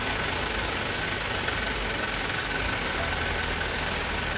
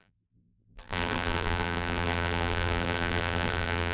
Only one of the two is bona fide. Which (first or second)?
first